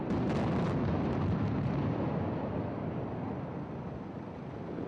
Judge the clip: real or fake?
real